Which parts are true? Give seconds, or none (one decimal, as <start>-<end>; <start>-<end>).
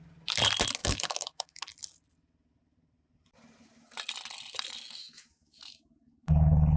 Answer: 0.0-0.8; 1.6-5.0